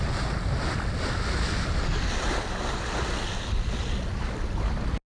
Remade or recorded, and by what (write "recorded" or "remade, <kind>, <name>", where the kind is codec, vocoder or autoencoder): recorded